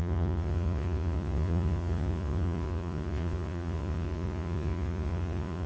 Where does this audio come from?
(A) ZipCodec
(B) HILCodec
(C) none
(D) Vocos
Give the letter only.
D